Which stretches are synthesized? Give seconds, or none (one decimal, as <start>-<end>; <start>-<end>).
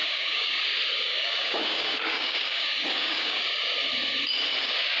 0.0-0.6; 1.0-3.4